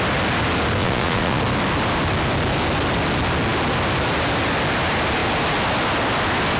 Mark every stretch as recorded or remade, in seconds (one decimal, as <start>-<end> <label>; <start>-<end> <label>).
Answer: 0.0-0.8 recorded; 0.8-1.4 remade; 1.4-6.6 recorded